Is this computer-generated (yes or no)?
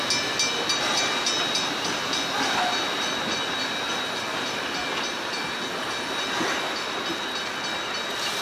no